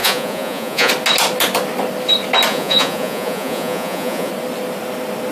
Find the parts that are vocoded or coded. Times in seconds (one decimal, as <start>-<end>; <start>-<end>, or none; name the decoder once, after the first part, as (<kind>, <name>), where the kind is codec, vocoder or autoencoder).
0.0-0.9 (vocoder, Vocos); 2.5-4.3

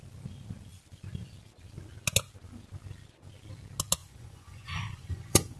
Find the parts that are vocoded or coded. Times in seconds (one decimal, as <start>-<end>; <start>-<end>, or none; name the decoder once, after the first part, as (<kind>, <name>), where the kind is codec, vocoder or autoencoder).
4.0-5.6 (vocoder, Vocos)

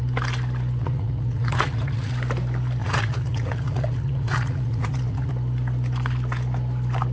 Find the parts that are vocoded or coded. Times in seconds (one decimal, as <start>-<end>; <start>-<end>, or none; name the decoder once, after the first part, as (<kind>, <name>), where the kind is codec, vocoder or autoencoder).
0.8-2.1 (vocoder, Vocos); 2.8-5.3

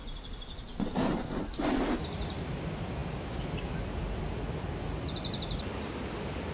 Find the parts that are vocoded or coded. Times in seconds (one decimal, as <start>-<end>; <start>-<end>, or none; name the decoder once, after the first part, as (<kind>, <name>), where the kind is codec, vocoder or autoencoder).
none